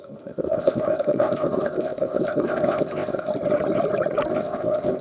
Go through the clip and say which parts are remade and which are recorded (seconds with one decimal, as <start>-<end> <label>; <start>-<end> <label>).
0.0-3.3 remade; 3.3-4.3 recorded; 4.3-5.0 remade